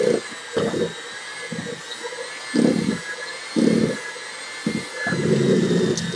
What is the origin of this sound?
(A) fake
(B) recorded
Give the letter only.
B